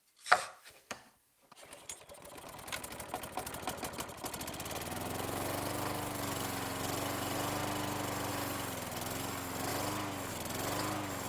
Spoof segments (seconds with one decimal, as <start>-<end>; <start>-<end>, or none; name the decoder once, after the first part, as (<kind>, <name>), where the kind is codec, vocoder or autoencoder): 0.6-1.3 (codec, SNAC)